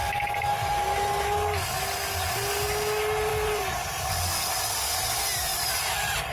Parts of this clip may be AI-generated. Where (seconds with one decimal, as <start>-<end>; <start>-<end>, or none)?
3.3-4.1; 5.5-6.3